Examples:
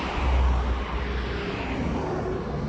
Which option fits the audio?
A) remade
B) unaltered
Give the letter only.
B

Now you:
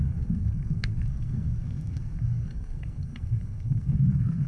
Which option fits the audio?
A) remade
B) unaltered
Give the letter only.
A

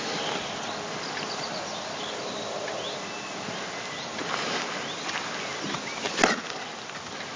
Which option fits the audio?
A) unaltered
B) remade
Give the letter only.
A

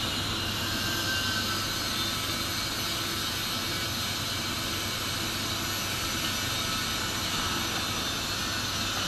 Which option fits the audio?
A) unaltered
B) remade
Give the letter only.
A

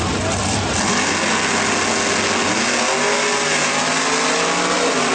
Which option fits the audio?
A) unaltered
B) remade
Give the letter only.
A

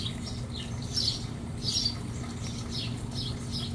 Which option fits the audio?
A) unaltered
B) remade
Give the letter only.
A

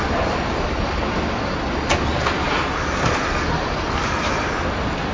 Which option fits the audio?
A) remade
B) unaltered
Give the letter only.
B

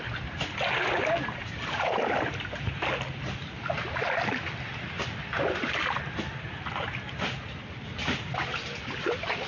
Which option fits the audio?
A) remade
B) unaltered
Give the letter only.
B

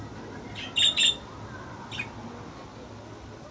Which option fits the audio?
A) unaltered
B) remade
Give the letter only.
A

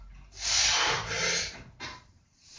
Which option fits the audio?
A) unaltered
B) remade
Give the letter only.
A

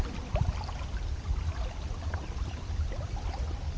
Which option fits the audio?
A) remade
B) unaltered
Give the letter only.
B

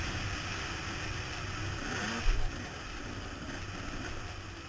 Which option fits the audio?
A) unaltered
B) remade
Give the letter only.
A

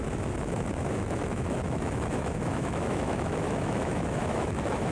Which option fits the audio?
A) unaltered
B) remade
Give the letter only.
B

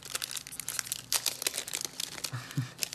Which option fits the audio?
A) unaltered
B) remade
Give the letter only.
A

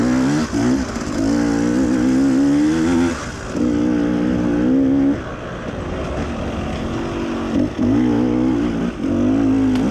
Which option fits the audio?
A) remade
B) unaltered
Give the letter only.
B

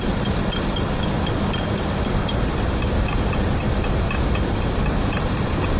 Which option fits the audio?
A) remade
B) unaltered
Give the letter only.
A